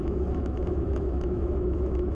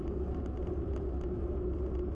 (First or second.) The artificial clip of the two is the first